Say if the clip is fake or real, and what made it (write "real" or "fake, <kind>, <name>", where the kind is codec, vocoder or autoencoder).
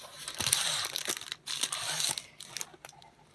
real